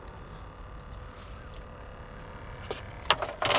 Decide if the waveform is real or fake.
real